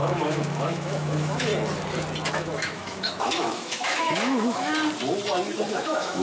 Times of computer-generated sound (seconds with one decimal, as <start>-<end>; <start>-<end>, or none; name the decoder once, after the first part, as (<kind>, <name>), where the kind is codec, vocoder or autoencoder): 0.0-1.5 (autoencoder, DAC-VAE); 2.3-4.7; 5.7-6.2